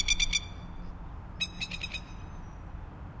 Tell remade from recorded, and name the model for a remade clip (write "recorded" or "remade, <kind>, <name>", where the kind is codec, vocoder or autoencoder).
recorded